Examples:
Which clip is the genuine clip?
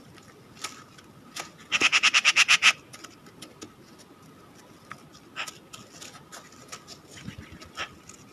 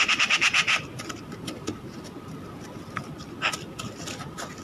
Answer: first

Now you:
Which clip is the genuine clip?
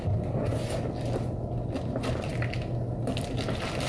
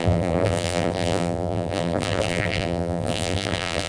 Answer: first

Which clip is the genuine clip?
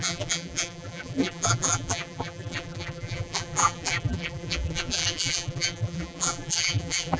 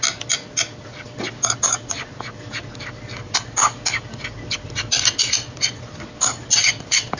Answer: second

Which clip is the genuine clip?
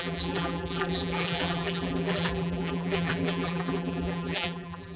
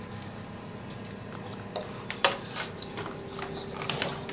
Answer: second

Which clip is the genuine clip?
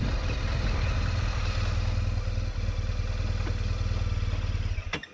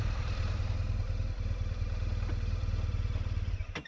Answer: first